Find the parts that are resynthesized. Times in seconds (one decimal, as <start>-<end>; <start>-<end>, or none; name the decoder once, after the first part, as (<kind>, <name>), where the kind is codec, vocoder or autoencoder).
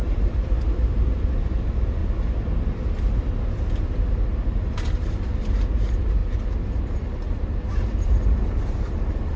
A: 0.0-2.0 (vocoder, BigVGAN v2); 4.5-6.2; 7.7-9.4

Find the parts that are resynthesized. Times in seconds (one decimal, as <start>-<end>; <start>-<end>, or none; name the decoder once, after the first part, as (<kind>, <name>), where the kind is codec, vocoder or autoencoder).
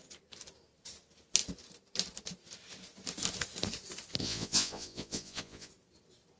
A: 4.2-5.7 (vocoder, Vocos)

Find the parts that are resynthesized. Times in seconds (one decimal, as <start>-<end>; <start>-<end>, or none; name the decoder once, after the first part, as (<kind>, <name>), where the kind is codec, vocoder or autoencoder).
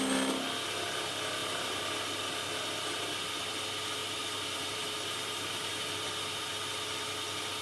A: 1.4-1.9 (vocoder, BigVGAN v2); 4.0-5.7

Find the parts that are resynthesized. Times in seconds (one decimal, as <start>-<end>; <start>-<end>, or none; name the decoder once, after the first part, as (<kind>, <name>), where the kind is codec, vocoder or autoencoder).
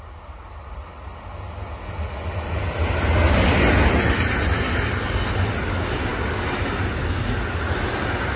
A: none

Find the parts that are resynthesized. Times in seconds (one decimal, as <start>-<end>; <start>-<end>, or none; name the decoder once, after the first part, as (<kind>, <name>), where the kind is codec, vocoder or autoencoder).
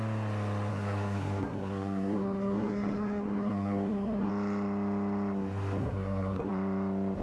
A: 0.7-4.3 (codec, SNAC); 5.8-6.5